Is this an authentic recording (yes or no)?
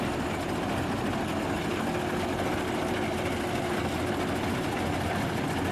yes